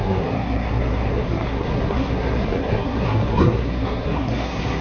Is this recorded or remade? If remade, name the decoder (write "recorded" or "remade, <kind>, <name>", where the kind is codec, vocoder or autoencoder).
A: remade, codec, SNAC